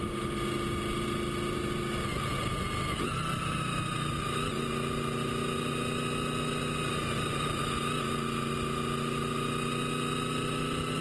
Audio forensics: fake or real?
real